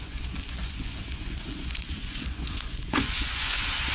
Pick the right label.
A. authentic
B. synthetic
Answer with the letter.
B